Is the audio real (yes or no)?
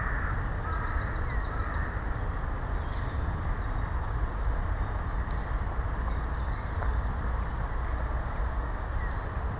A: yes